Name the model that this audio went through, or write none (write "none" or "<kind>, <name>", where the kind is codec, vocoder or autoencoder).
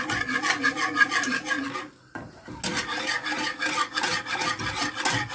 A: none